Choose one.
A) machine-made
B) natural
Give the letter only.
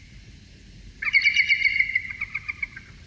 B